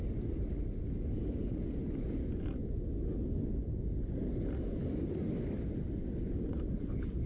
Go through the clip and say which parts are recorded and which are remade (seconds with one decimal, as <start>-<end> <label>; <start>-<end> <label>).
0.0-7.3 recorded